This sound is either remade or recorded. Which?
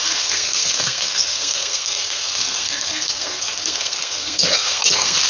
remade